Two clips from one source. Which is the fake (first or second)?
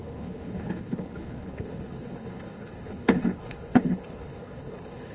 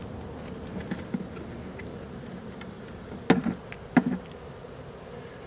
first